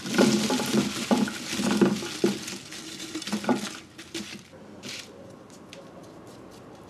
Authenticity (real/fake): real